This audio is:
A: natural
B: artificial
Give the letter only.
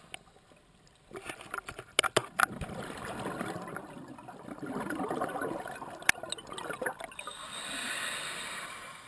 A